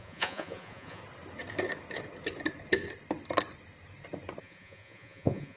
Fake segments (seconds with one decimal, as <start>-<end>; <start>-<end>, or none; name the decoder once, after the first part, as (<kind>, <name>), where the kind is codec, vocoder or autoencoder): 0.0-1.0 (vocoder, Vocos); 4.4-5.6